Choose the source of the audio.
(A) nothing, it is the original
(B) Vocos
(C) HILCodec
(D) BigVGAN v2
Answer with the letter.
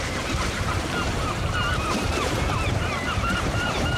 D